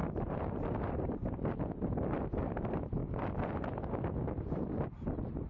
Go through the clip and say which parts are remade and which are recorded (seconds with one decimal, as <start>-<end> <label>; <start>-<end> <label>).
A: 0.0-1.3 remade; 1.3-5.5 recorded